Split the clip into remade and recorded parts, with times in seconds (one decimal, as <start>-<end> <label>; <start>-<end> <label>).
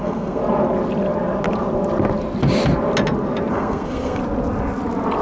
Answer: 0.0-0.4 remade; 0.4-3.5 recorded; 3.5-4.2 remade; 4.2-5.2 recorded